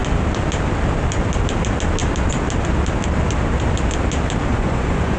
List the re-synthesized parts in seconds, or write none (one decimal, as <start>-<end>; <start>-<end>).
4.5-5.2